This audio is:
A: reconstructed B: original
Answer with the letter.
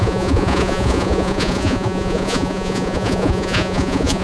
A